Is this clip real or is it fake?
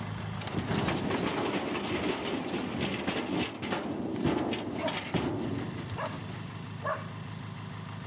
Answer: real